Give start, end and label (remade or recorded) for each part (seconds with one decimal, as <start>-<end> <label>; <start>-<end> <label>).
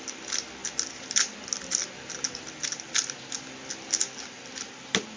0.0-5.2 recorded